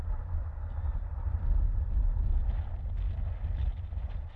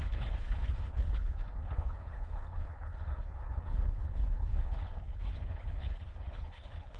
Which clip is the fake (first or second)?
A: second